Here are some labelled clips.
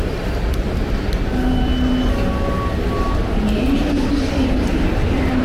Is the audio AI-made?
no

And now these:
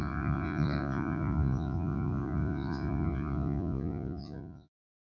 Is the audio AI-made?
yes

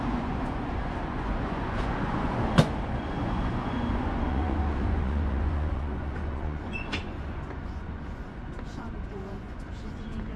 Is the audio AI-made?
yes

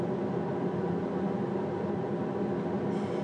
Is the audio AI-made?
no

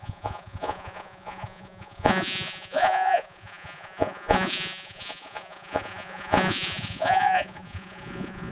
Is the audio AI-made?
yes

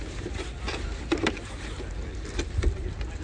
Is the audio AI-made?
no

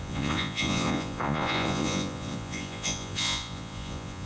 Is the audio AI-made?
yes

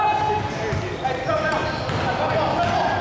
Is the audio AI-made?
no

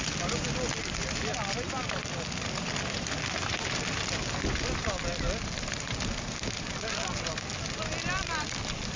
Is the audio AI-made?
no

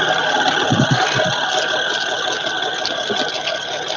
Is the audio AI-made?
no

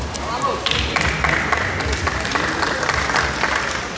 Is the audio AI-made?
no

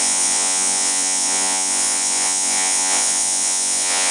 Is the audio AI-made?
yes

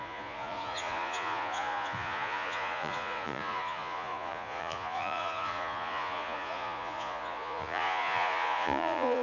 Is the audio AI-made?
yes